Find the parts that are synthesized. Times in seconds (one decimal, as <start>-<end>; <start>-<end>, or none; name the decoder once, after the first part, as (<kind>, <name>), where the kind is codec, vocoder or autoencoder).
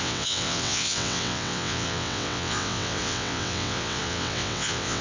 0.0-5.0 (vocoder, WaveNeXt)